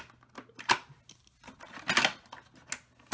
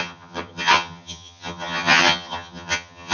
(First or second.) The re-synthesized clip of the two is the second